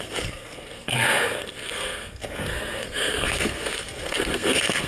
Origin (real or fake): fake